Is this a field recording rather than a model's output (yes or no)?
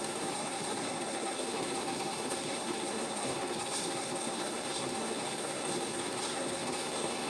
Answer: no